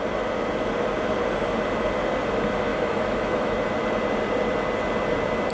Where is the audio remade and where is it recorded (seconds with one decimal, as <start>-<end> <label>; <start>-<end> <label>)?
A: 0.0-2.7 recorded; 2.7-3.5 remade; 3.5-5.5 recorded